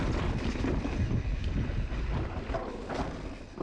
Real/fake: real